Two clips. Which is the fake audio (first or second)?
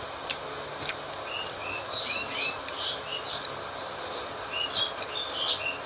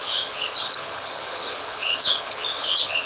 second